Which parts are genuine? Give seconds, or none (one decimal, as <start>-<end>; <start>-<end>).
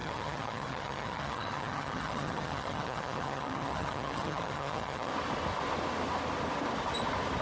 5.1-7.4